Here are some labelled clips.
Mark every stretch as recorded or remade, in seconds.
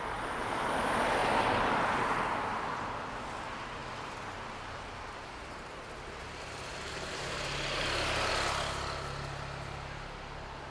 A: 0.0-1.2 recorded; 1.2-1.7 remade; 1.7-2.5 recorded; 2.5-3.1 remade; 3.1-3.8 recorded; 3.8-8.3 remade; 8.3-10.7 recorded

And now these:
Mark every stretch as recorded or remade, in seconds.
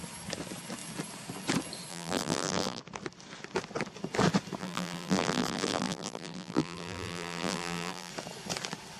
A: 0.0-1.9 recorded; 1.9-2.8 remade; 2.8-4.6 recorded; 4.6-8.1 remade; 8.1-9.0 recorded